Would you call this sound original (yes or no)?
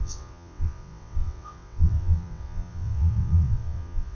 no